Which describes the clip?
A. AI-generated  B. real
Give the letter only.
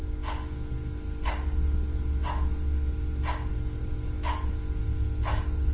B